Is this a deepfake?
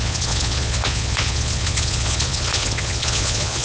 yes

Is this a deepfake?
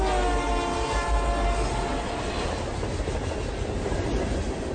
no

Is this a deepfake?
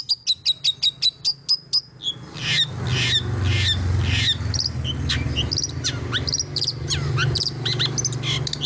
no